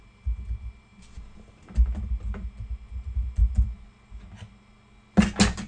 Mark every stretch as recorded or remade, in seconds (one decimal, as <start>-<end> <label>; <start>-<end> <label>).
0.0-5.7 recorded